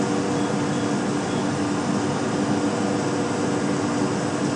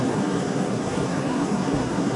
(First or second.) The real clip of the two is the first